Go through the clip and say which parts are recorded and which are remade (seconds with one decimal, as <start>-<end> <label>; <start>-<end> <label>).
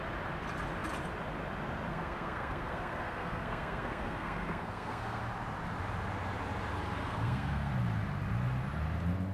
0.0-1.9 recorded; 1.9-5.2 remade; 5.2-7.0 recorded; 7.0-7.7 remade; 7.7-9.3 recorded